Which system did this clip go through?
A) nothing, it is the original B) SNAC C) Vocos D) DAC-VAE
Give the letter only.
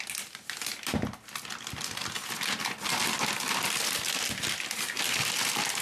A